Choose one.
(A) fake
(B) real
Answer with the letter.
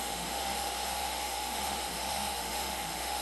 A